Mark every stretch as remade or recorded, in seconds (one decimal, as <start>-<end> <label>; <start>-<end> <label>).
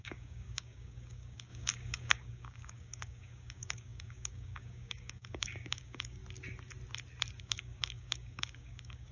0.0-6.2 remade; 6.2-7.4 recorded; 7.4-9.1 remade